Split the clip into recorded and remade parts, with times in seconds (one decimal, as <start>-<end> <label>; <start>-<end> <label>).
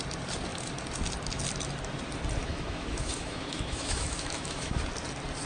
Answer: 0.0-2.4 recorded; 2.4-4.8 remade; 4.8-5.5 recorded